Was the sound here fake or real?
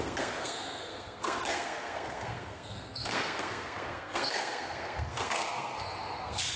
fake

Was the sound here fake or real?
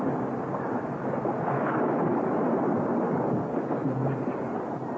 real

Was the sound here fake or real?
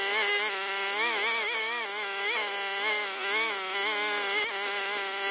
real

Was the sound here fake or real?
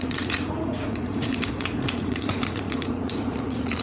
fake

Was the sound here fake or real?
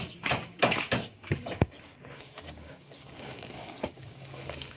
fake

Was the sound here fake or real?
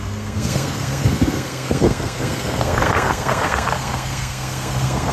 fake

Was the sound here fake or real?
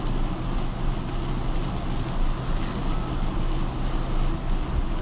real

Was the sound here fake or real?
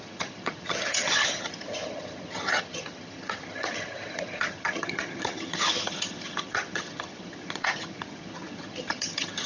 fake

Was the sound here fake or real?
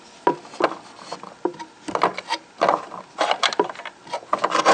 real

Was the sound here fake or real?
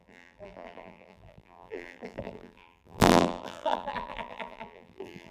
fake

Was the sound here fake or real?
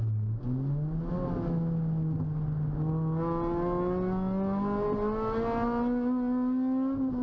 real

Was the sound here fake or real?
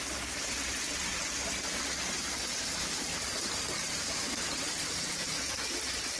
fake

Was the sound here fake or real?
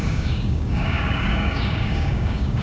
fake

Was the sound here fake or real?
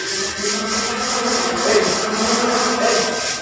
real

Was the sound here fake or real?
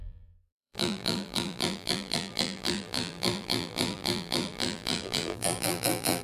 fake